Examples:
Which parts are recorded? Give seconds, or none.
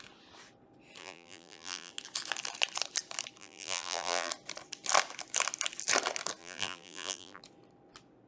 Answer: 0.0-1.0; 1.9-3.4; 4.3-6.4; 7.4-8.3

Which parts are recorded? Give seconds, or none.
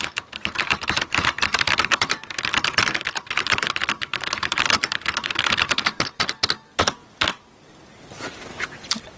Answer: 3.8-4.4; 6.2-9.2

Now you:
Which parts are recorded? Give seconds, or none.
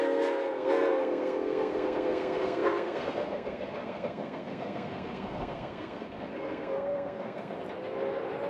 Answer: 7.6-8.5